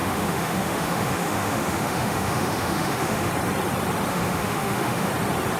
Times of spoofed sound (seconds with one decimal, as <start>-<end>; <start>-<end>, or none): 0.0-3.3; 4.1-5.1